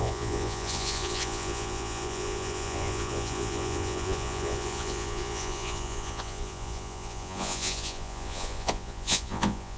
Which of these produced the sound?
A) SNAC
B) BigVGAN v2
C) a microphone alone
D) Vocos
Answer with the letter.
D